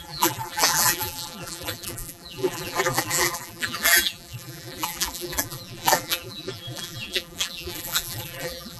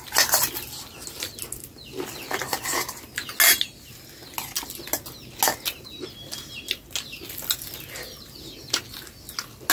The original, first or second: second